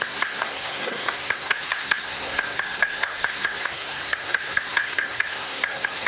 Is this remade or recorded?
remade